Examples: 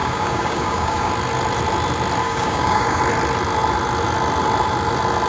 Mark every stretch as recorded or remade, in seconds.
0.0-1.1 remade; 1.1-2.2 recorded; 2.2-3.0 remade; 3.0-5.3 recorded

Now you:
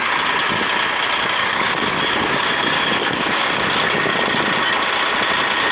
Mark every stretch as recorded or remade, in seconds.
0.0-1.4 recorded; 1.4-3.5 remade; 3.5-5.7 recorded

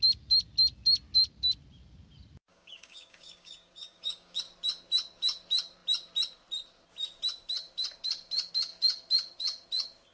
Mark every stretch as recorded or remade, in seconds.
0.0-2.5 recorded; 2.5-4.4 remade; 4.4-10.1 recorded

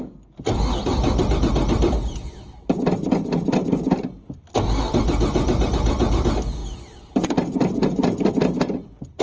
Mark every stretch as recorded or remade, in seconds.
0.0-9.2 recorded

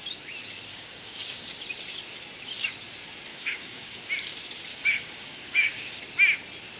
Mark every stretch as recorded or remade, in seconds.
0.0-0.7 recorded; 0.7-1.5 remade; 1.5-3.3 recorded; 3.3-4.0 remade; 4.0-4.7 recorded; 4.7-6.0 remade; 6.0-6.8 recorded